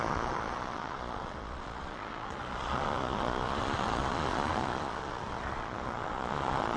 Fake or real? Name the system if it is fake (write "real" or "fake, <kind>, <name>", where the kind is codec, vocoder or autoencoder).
fake, vocoder, Vocos